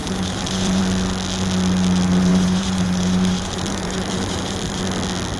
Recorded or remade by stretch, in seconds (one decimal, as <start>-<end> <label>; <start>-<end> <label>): 0.0-0.8 remade; 0.8-2.3 recorded; 2.3-4.8 remade; 4.8-5.4 recorded